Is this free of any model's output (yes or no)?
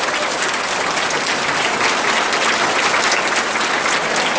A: yes